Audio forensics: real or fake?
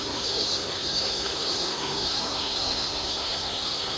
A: fake